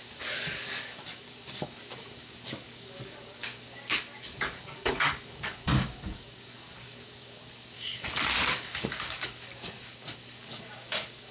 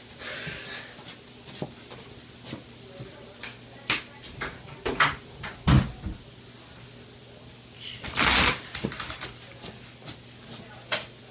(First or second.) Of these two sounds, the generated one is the first